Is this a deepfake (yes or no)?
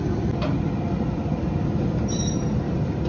no